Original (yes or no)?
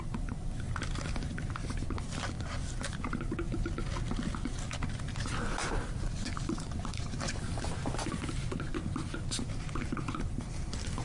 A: yes